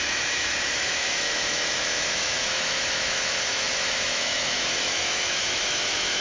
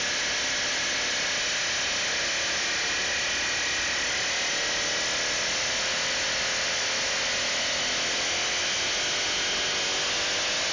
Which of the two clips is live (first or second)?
second